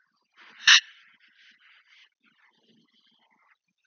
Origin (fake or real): real